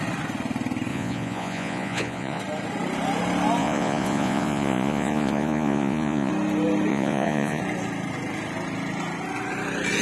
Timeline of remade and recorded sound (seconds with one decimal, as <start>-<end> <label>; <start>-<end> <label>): 0.0-0.9 recorded; 0.9-2.4 remade; 2.4-3.6 recorded; 3.6-6.3 remade; 6.3-6.9 recorded; 6.9-7.6 remade; 7.6-10.0 recorded